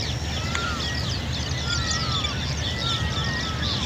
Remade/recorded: recorded